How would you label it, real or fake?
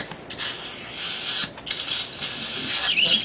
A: real